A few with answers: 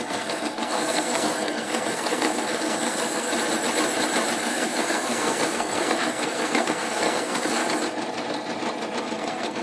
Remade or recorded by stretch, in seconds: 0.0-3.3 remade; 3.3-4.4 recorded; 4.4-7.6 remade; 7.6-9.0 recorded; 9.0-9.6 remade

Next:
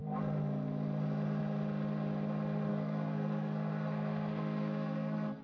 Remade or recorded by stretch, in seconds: 0.0-2.7 recorded; 2.7-5.4 remade

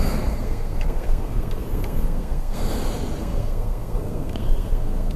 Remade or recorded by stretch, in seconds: 0.0-2.6 remade; 2.6-3.2 recorded; 3.2-5.2 remade

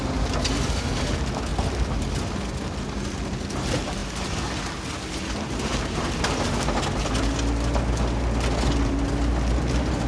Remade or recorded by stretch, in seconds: 0.0-10.1 recorded

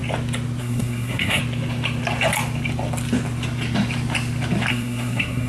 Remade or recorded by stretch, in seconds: 0.0-0.6 recorded; 0.6-1.4 remade; 1.4-4.7 recorded; 4.7-5.5 remade

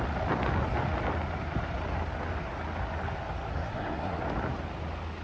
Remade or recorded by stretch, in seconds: 0.0-3.5 recorded; 3.5-4.2 remade; 4.2-5.2 recorded

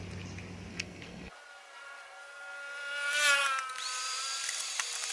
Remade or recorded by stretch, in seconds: 0.0-0.7 recorded; 0.7-1.3 remade; 1.3-5.1 recorded

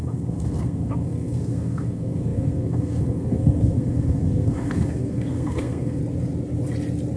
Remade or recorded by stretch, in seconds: 0.0-6.0 remade; 6.0-7.2 recorded